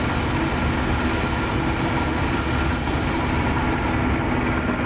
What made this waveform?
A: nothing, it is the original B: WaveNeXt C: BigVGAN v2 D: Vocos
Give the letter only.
A